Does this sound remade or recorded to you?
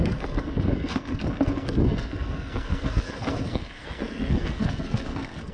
remade